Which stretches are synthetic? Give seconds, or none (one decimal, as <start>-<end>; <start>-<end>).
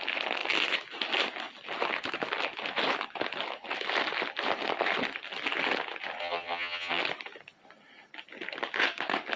6.2-7.0